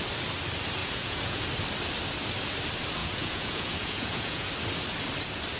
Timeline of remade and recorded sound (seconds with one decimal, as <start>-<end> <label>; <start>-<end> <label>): 0.0-0.8 recorded; 0.8-1.4 remade; 1.4-3.0 recorded; 3.0-4.5 remade; 4.5-5.6 recorded